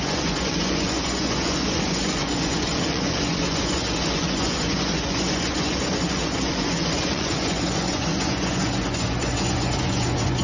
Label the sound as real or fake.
fake